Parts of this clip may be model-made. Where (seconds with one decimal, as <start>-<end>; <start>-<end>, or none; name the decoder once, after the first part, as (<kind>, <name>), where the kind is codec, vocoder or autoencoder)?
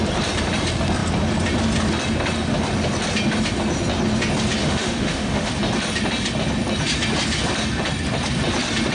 4.6-5.5 (autoencoder, DAC-VAE)